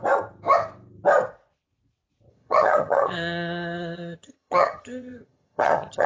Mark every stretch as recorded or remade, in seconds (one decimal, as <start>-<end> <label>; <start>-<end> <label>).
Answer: 0.0-2.3 recorded; 2.3-6.1 remade